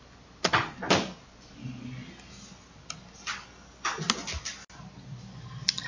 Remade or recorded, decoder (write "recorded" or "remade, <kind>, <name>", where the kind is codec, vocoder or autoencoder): recorded